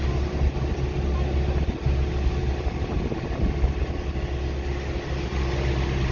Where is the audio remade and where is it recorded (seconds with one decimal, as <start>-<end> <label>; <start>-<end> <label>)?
0.0-6.1 recorded